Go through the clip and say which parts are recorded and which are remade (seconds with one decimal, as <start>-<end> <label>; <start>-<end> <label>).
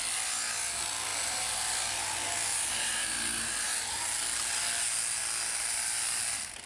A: 0.0-6.7 recorded